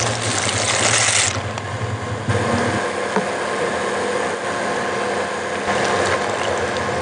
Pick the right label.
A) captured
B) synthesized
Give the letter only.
A